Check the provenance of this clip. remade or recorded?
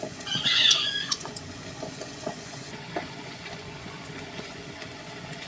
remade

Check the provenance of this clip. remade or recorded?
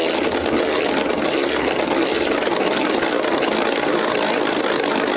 recorded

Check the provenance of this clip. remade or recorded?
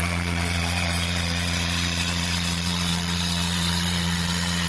remade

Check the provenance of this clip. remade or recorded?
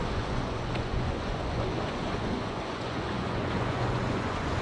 remade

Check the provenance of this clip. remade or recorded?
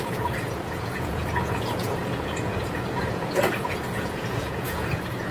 remade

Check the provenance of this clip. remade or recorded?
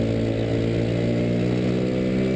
recorded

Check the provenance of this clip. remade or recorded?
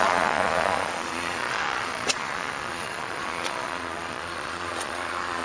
remade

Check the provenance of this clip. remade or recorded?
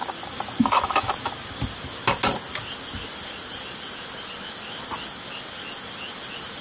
recorded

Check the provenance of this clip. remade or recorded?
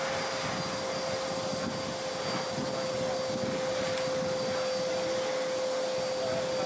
recorded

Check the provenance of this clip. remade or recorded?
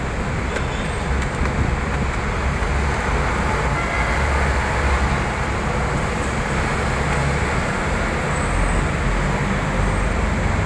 recorded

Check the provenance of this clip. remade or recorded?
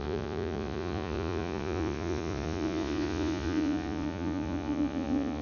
remade